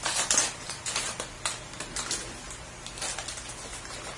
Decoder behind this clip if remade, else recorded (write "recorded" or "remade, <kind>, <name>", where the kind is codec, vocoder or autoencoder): recorded